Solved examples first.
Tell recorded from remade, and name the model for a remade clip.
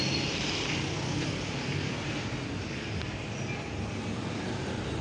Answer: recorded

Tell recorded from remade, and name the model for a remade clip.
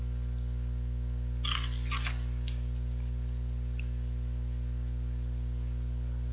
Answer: recorded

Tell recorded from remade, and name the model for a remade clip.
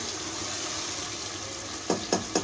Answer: recorded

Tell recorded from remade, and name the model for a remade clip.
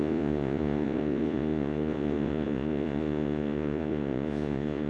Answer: remade, vocoder, Vocos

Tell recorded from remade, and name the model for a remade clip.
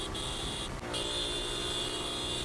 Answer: recorded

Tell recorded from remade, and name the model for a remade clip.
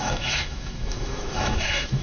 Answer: remade, autoencoder, DAC-VAE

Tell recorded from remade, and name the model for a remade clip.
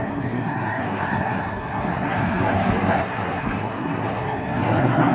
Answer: remade, codec, SNAC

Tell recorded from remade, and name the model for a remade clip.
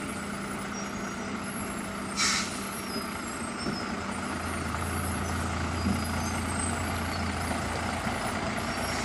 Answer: recorded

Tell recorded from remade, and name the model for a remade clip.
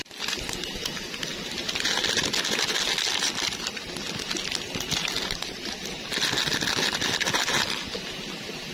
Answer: recorded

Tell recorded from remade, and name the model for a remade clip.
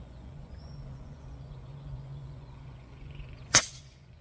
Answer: remade, vocoder, Vocos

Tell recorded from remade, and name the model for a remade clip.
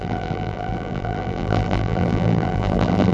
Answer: remade, vocoder, BigVGAN v2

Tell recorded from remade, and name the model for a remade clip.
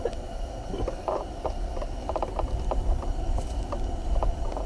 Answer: recorded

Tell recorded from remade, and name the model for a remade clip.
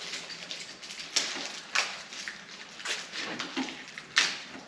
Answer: recorded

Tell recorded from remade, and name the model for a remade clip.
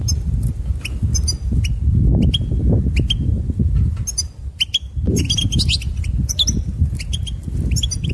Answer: recorded